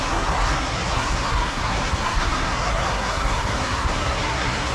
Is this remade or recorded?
remade